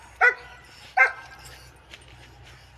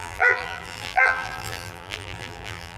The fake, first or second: second